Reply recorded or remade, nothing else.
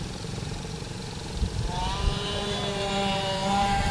remade